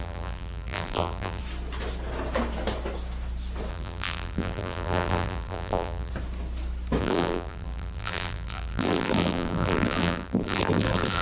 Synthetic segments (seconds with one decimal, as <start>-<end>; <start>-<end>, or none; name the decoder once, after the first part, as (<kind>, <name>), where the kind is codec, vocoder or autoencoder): 0.0-1.4 (vocoder, BigVGAN v2); 3.7-6.1; 7.0-11.2